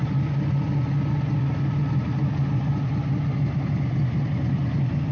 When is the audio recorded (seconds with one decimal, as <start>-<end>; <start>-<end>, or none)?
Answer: 0.0-5.1

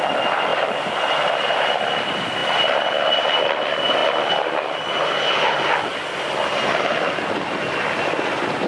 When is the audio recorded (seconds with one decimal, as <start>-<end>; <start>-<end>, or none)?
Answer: 0.0-8.7

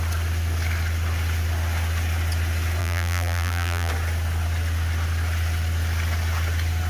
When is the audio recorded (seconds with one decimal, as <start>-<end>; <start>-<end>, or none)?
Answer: 0.0-2.8; 3.9-6.9

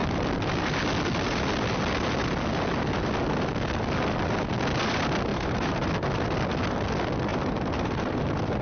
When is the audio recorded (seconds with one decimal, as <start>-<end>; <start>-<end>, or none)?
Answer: 0.0-5.3; 5.9-7.3; 8.2-8.6